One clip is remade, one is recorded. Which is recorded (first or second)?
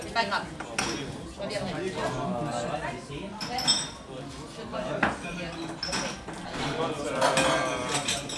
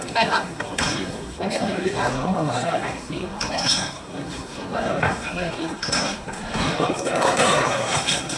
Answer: first